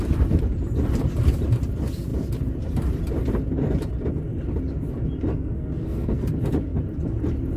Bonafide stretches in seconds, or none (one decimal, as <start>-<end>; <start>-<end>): 0.0-5.3; 6.3-7.6